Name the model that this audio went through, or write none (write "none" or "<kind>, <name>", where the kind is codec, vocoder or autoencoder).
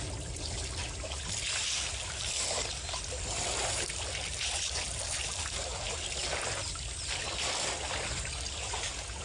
none